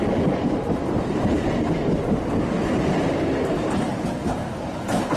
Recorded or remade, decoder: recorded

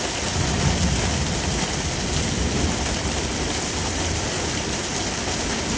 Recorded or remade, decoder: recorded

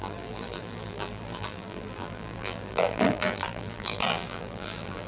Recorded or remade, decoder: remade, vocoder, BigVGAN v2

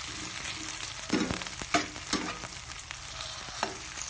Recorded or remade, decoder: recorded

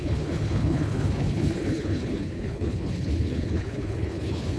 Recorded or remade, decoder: remade, codec, HILCodec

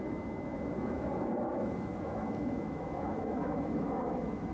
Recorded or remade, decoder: remade, autoencoder, DAC-VAE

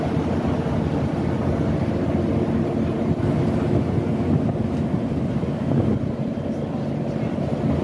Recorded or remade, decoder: recorded